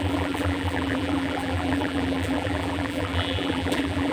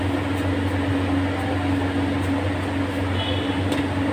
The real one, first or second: second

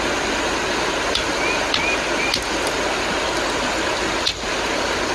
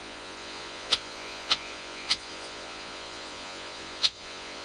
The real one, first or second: first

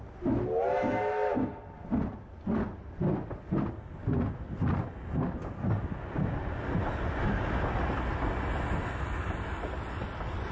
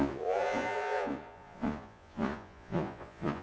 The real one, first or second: first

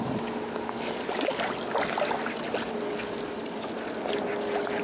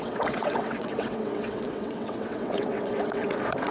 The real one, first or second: first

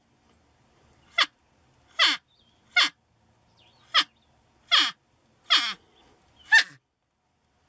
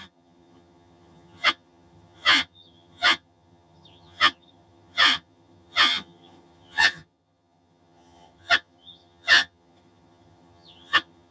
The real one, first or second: first